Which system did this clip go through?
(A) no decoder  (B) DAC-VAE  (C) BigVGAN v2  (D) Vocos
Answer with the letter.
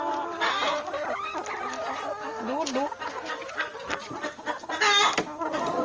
A